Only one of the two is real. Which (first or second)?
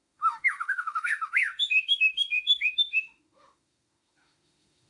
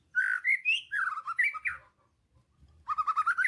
second